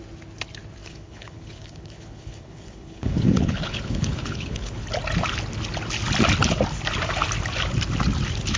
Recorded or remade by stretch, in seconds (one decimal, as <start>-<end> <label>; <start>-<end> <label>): 0.0-0.8 recorded; 0.8-4.9 remade; 4.9-8.6 recorded